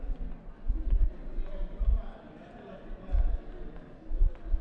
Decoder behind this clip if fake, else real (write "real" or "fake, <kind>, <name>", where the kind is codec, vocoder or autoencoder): real